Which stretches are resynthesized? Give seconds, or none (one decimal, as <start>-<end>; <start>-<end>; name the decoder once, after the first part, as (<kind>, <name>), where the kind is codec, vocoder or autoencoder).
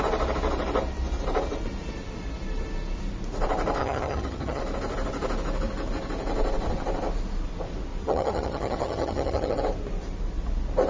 3.8-4.6 (vocoder, HiFi-GAN); 8.0-9.6